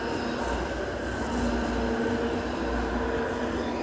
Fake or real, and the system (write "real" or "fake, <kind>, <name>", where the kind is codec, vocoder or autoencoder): real